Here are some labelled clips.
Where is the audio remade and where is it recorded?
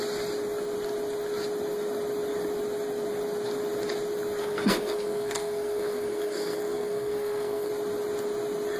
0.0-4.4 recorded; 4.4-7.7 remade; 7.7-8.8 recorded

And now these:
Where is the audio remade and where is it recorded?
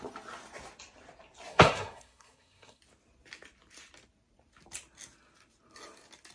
0.0-1.5 recorded; 1.5-2.8 remade; 2.8-6.3 recorded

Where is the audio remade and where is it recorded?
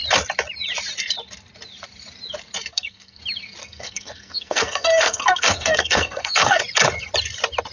0.0-2.7 recorded; 2.7-3.2 remade; 3.2-3.6 recorded; 3.6-6.6 remade; 6.6-7.7 recorded